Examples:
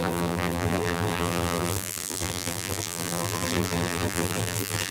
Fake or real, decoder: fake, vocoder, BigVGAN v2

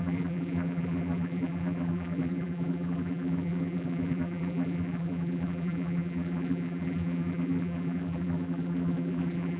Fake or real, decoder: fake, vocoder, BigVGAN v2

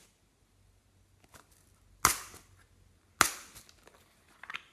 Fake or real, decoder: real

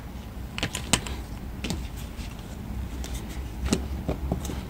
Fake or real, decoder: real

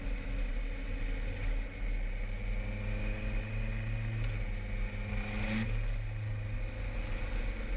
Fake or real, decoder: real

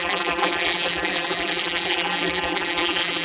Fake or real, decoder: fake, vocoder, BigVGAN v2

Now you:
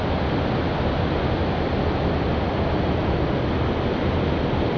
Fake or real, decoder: real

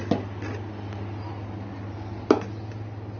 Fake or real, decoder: real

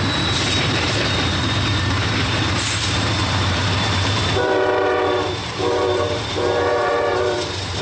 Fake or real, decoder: fake, vocoder, BigVGAN v2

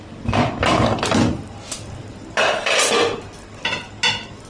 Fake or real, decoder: real